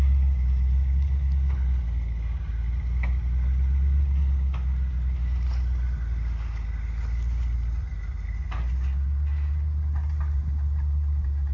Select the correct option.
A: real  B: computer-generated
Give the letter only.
A